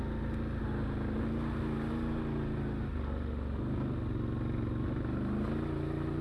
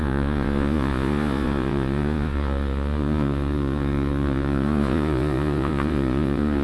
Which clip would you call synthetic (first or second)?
second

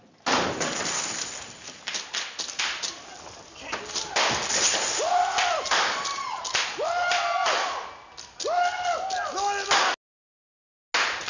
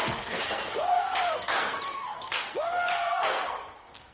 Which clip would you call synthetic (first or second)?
second